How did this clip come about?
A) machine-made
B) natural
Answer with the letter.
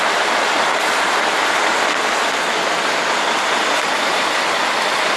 B